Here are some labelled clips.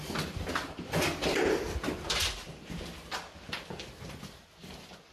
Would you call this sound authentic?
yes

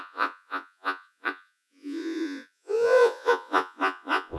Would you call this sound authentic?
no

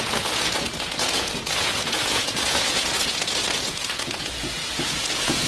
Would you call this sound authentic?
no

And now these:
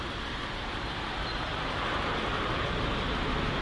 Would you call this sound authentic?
yes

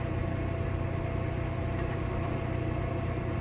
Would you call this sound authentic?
yes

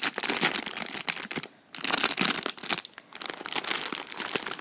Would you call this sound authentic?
yes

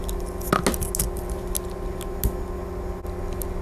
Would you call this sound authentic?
yes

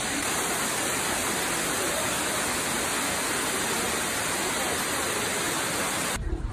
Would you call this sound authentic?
yes